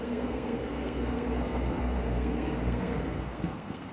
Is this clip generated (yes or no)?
yes